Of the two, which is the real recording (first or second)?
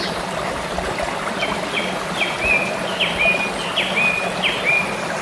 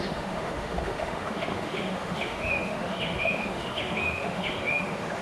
first